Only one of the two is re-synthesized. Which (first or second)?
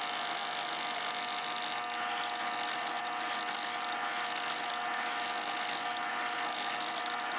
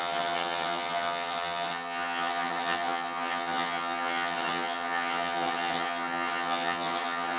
second